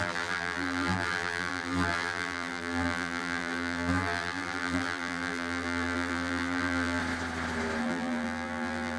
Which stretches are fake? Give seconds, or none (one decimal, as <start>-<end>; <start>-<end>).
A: 0.0-7.0; 7.8-9.0